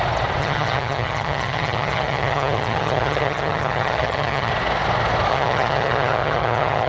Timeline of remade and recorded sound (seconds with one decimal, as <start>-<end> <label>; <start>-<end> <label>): 0.0-0.4 recorded; 0.4-4.5 remade; 4.5-5.3 recorded; 5.3-6.9 remade